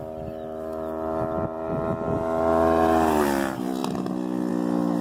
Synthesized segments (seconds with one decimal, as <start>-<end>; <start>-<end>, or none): none